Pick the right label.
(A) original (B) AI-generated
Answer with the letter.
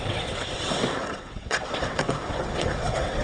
B